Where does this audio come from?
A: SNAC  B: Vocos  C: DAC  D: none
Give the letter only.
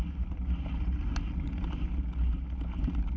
D